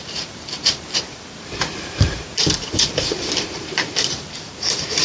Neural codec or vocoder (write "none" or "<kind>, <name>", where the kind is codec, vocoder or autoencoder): vocoder, BigVGAN v2